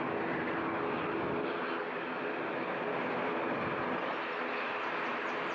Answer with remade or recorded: recorded